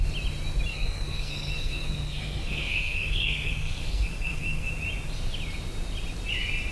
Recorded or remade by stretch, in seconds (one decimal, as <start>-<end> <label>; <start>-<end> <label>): 0.0-0.7 recorded; 0.7-4.7 remade; 4.7-6.7 recorded